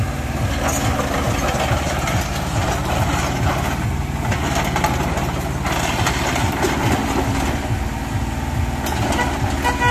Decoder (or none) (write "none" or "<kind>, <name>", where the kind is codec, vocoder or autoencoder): none